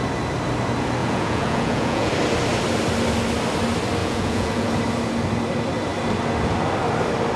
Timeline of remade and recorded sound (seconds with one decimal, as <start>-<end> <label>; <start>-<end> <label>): 0.0-1.0 recorded; 1.0-2.1 remade; 2.1-4.0 recorded; 4.0-4.7 remade; 4.7-7.4 recorded